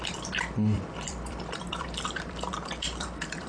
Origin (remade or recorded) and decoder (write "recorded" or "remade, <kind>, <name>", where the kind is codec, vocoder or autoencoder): remade, vocoder, BigVGAN v2